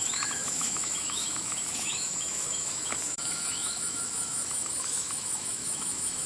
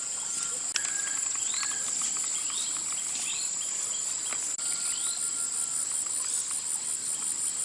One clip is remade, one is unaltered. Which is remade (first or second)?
first